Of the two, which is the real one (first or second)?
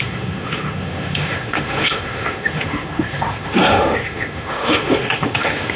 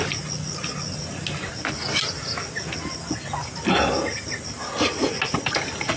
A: second